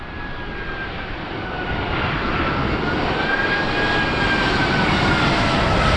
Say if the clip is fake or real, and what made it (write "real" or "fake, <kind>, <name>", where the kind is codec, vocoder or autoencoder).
real